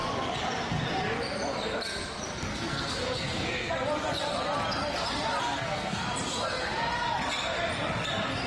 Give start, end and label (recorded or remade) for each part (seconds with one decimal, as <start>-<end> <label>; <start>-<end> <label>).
0.0-2.5 recorded; 2.5-3.7 remade; 3.7-5.4 recorded; 5.4-6.0 remade; 6.0-8.5 recorded